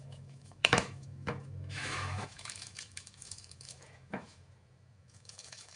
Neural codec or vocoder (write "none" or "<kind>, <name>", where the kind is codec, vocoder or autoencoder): autoencoder, DAC-VAE